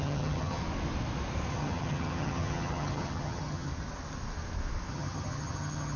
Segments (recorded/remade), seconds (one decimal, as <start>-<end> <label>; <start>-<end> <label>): 0.0-0.6 remade; 0.6-1.5 recorded; 1.5-3.7 remade; 3.7-4.9 recorded; 4.9-6.0 remade